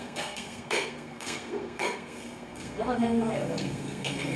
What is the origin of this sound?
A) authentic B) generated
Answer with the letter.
B